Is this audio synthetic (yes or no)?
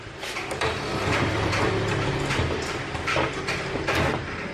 yes